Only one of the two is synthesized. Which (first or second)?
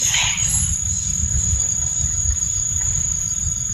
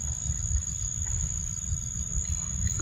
first